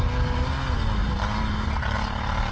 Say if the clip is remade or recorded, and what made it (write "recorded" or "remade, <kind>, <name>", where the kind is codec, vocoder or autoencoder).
recorded